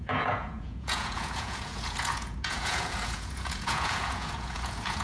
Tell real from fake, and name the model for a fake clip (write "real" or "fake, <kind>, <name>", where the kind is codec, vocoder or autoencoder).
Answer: fake, vocoder, Vocos